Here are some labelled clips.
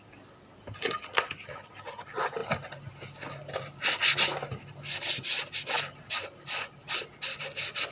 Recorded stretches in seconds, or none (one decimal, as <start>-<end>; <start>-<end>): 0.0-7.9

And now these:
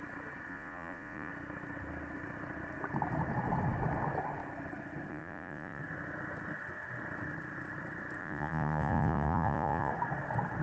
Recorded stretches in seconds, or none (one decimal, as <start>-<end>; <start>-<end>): 0.0-0.5; 1.3-5.1; 5.8-8.2; 9.9-10.6

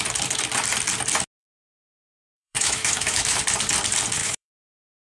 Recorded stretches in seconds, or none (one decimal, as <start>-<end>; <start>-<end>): 0.0-1.4; 3.4-4.2

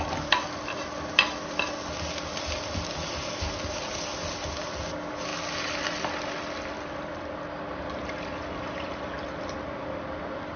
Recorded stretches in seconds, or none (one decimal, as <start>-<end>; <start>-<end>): 0.0-10.6